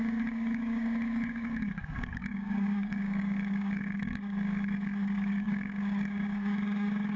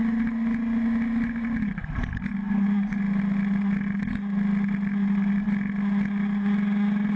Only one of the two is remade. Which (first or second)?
first